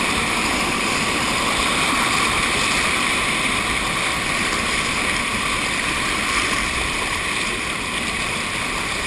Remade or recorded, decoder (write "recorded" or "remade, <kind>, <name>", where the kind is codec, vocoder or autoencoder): remade, vocoder, BigVGAN v2